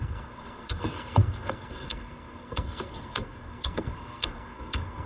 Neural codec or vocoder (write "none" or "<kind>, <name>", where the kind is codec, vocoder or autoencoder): codec, SNAC